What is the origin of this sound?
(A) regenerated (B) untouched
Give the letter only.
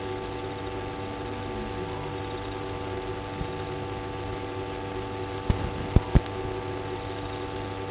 B